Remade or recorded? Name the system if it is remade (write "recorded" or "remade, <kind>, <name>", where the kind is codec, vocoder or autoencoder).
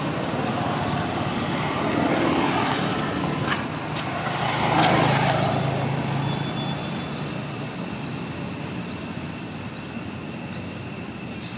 recorded